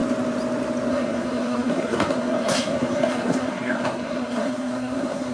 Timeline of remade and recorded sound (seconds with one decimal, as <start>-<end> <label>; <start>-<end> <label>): 0.0-0.9 recorded; 0.9-5.3 remade